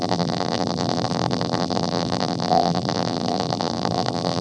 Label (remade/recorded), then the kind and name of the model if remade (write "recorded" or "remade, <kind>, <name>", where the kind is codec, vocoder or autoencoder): remade, vocoder, BigVGAN v2